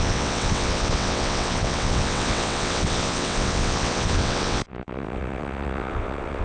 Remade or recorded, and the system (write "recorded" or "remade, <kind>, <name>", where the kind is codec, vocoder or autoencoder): remade, vocoder, WaveNeXt